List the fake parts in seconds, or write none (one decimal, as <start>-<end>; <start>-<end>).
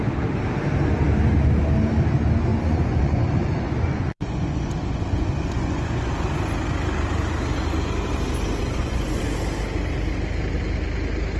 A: 2.5-6.1; 8.6-9.2